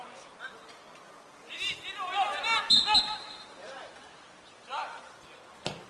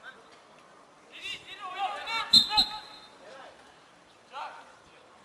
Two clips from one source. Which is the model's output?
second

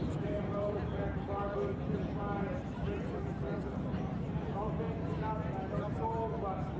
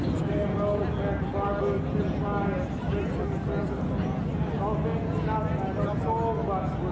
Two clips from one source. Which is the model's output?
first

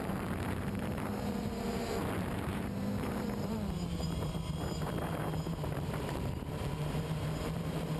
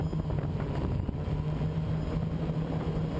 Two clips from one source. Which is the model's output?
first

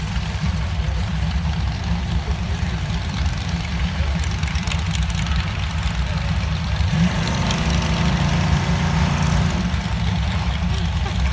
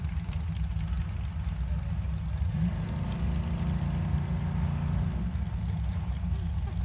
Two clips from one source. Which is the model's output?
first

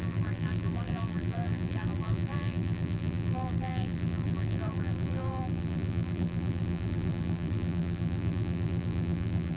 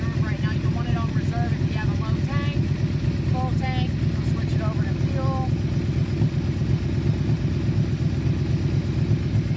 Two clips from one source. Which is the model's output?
first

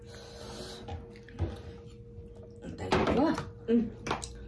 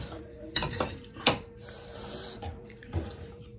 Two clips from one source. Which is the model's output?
second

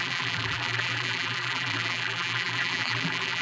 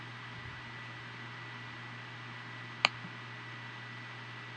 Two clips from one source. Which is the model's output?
first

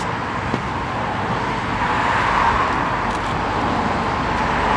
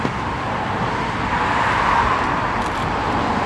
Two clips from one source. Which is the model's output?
second